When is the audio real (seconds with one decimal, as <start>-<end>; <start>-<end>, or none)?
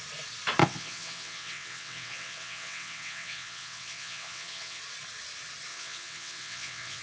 0.0-0.6; 4.8-5.7